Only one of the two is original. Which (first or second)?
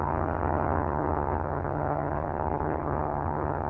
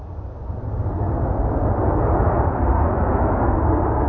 second